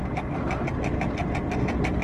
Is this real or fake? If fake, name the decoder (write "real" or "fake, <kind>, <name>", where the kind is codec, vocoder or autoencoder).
real